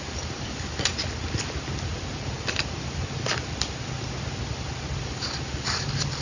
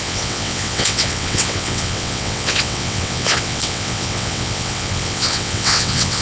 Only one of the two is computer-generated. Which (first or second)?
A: second